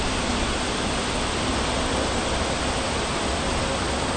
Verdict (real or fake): real